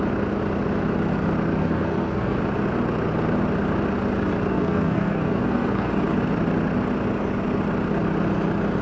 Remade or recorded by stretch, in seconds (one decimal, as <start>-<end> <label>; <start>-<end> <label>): 0.0-1.6 recorded; 1.6-2.4 remade; 2.4-4.5 recorded; 4.5-5.9 remade; 5.9-8.8 recorded